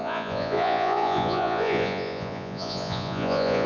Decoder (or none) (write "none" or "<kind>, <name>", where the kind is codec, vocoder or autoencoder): vocoder, Vocos